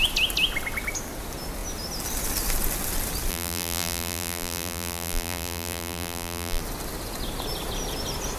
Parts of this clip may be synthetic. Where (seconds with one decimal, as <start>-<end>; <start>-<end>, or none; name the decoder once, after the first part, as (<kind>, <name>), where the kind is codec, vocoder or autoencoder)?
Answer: 3.3-6.6 (vocoder, BigVGAN v2)